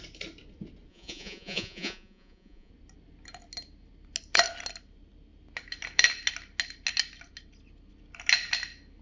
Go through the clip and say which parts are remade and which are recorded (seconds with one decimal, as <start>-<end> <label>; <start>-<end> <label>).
0.0-0.9 recorded; 0.9-2.7 remade; 2.7-9.0 recorded